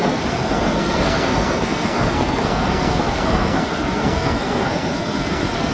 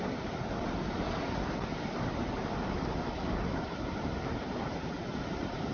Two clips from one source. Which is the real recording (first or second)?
second